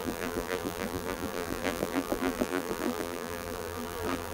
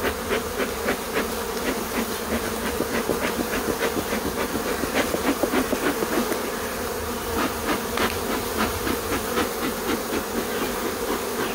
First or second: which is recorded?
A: second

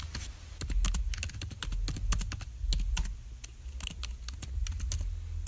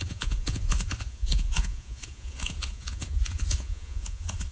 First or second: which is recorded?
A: first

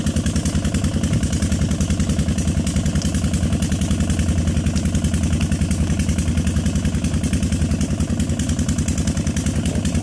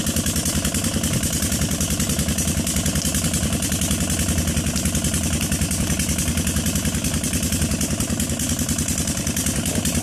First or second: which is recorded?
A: first